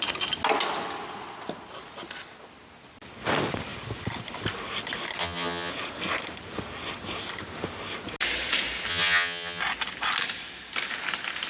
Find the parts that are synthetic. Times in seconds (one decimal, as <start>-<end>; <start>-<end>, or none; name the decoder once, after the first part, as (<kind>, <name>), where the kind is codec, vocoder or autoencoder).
5.2-5.7 (vocoder, HiFi-GAN); 8.9-9.6